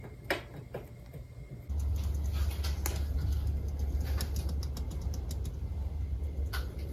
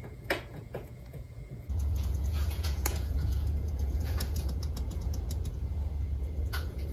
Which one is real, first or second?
first